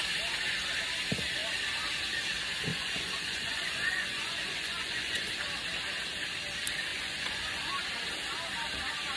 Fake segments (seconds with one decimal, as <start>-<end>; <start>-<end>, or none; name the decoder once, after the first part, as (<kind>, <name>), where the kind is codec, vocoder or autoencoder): 2.7-5.3 (vocoder, Vocos); 6.9-7.7